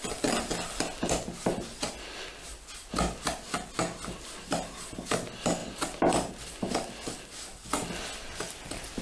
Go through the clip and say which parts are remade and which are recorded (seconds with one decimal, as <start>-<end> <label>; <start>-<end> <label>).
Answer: 0.0-9.0 recorded